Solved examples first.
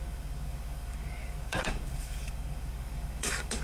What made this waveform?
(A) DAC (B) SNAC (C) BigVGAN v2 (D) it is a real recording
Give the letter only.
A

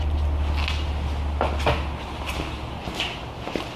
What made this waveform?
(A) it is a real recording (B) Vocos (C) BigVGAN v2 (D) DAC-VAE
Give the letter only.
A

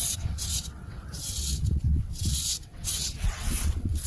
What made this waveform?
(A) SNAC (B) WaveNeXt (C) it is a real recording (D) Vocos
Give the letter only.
B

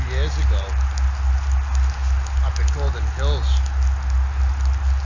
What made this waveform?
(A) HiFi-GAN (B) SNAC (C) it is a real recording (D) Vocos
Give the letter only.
C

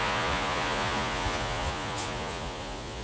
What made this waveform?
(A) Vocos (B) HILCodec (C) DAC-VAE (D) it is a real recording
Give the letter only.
A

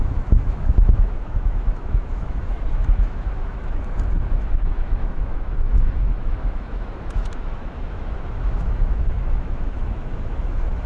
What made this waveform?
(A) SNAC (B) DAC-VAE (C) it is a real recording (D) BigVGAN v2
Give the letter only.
B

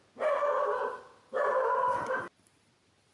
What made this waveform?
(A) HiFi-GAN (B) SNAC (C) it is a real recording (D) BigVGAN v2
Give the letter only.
C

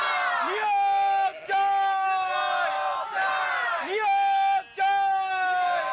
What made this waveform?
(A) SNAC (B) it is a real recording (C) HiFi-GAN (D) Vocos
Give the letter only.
B